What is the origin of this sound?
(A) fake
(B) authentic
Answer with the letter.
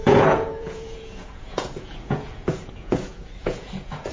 A